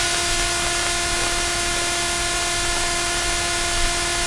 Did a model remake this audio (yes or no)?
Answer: no